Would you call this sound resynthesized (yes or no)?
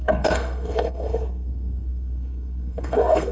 yes